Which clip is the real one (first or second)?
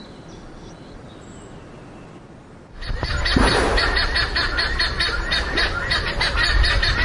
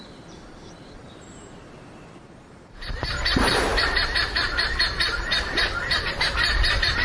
first